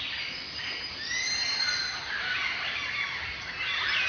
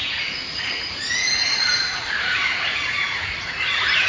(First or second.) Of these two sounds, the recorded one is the first